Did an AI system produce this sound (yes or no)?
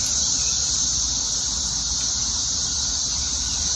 no